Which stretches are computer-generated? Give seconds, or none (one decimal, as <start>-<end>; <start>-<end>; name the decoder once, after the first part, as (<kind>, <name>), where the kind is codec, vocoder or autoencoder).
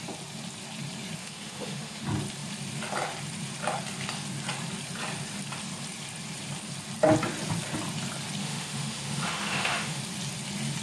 1.2-2.0 (autoencoder, DAC-VAE); 8.4-10.0